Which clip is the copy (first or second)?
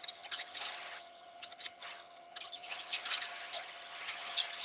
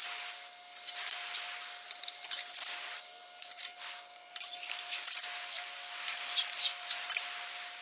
first